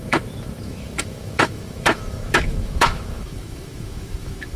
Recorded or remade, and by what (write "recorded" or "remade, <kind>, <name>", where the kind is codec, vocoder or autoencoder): remade, autoencoder, DAC-VAE